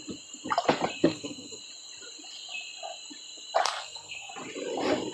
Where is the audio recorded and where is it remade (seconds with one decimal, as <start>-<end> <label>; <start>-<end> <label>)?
0.0-1.0 recorded; 1.0-1.6 remade; 1.6-3.6 recorded; 3.6-4.3 remade; 4.3-5.1 recorded